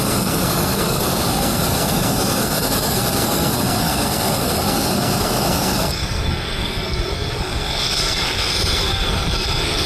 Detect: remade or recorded remade